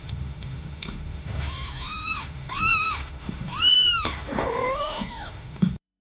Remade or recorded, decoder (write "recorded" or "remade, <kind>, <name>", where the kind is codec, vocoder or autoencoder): remade, autoencoder, DAC-VAE